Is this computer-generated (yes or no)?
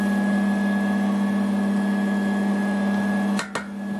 no